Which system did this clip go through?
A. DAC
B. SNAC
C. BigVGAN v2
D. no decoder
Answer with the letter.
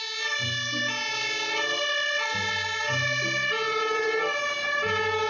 D